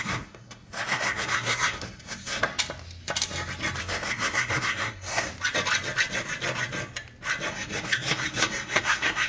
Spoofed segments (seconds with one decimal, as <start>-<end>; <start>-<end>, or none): 0.0-2.5; 3.8-5.3; 7.5-9.3